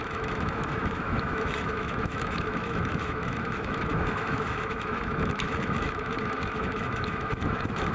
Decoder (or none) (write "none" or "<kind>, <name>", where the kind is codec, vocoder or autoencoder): autoencoder, DAC-VAE